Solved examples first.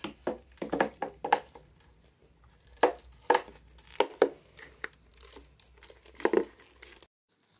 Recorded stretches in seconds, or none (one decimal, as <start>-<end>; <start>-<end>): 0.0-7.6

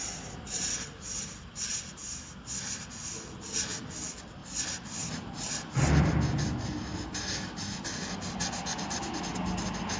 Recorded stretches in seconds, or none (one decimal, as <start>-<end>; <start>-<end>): 0.0-10.0

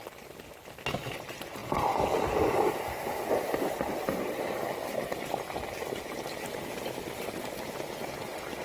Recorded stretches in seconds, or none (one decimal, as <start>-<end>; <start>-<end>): 0.0-8.6

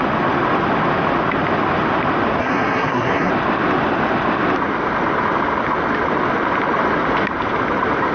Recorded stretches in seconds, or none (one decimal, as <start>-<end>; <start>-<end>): 0.0-2.4; 3.3-8.1

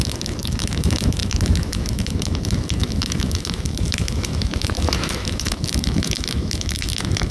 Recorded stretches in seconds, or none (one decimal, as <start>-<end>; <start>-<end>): none